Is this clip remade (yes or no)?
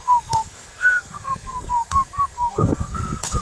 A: yes